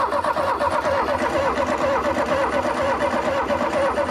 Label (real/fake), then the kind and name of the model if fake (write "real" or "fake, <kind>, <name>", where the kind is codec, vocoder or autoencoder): real